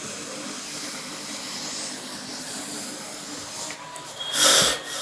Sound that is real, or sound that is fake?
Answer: real